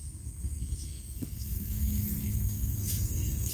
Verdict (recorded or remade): remade